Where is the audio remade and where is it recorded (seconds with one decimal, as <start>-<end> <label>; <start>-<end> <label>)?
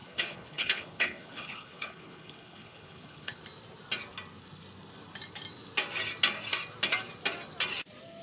0.0-3.4 remade; 3.4-8.2 recorded